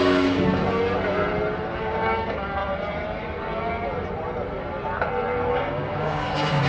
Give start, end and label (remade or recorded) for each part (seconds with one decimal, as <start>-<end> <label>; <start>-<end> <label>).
0.0-0.6 remade; 0.6-1.8 recorded; 1.8-2.6 remade; 2.6-5.5 recorded; 5.5-6.7 remade